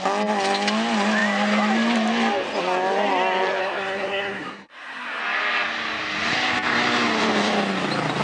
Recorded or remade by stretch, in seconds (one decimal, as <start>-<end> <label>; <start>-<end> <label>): 0.0-3.6 recorded; 3.6-5.2 remade; 5.2-8.2 recorded